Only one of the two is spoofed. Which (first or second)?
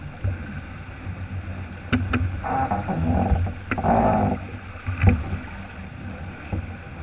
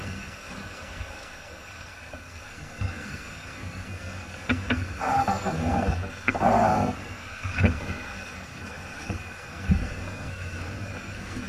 second